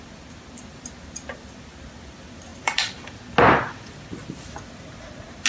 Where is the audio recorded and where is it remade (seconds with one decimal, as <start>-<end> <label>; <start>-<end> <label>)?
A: 0.0-2.5 recorded; 2.5-3.1 remade; 3.1-5.5 recorded